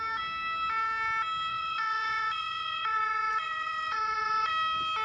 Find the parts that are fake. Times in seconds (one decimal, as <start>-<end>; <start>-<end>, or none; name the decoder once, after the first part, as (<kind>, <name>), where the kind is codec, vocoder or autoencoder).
1.5-4.5 (vocoder, Vocos)